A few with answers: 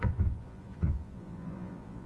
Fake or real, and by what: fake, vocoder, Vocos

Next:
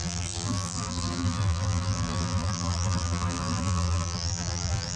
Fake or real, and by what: fake, vocoder, BigVGAN v2